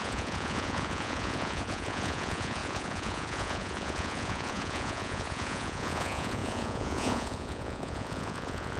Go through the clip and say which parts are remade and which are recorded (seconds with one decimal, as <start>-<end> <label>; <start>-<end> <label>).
0.0-8.8 remade